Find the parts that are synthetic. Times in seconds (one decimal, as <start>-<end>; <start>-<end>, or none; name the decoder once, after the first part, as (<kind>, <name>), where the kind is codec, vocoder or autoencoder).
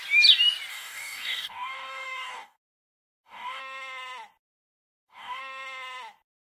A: 0.7-3.6 (codec, DAC); 4.8-5.4